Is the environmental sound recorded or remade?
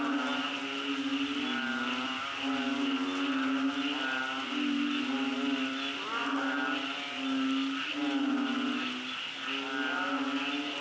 recorded